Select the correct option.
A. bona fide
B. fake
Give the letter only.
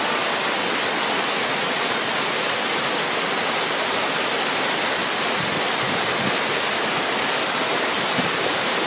A